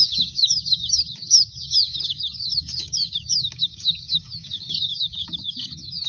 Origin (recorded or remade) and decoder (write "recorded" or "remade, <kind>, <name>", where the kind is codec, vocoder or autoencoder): remade, codec, DAC